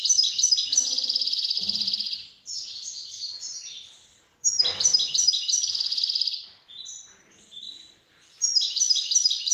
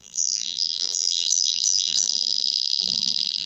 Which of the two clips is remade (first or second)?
second